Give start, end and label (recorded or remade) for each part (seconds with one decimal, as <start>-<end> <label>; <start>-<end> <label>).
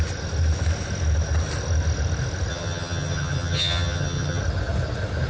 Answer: 0.0-2.5 recorded; 2.5-4.4 remade; 4.4-5.3 recorded